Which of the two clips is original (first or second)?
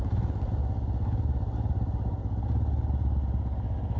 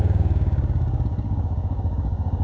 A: first